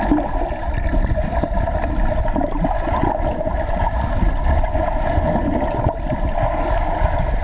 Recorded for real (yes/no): yes